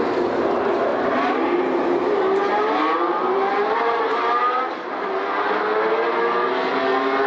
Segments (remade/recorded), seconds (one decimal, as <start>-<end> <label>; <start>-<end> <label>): 0.0-0.9 recorded; 0.9-4.6 remade; 4.6-7.3 recorded